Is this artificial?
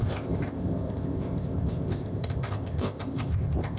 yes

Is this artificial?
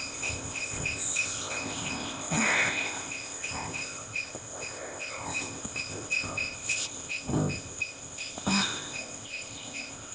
yes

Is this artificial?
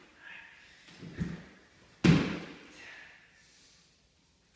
no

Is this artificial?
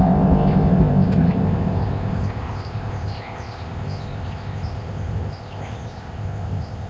yes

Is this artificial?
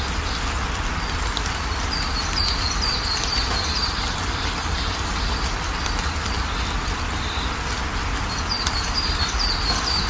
no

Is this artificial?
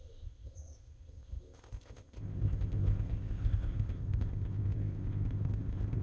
yes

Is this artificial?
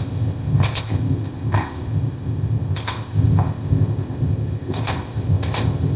yes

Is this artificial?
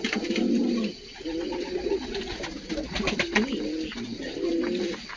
no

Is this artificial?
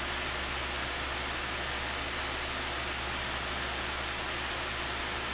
no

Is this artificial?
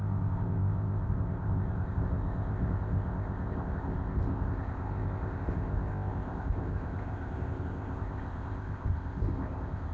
yes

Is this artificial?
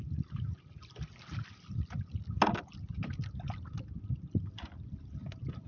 no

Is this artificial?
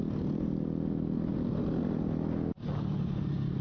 no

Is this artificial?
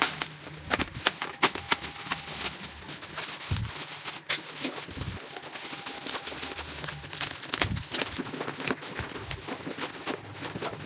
no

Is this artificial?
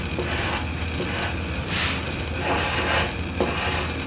no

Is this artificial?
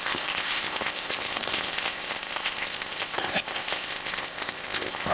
yes